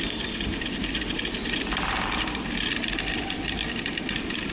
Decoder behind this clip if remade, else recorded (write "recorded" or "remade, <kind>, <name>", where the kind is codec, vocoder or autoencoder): recorded